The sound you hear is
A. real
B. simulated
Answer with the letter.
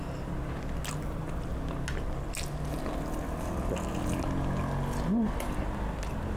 A